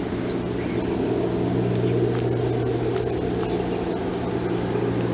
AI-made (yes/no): no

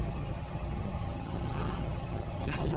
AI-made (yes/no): yes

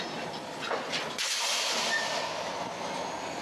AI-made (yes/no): no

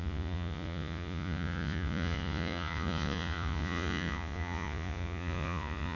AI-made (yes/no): yes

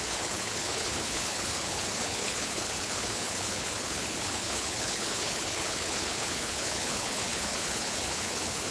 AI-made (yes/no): yes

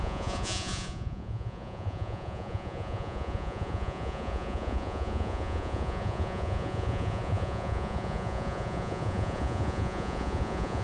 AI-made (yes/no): yes